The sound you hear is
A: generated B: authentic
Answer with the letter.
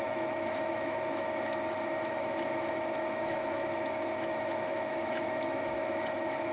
A